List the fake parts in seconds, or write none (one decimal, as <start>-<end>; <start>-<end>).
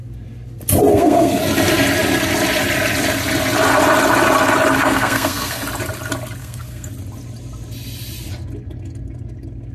0.9-1.4; 4.8-5.6; 6.4-6.9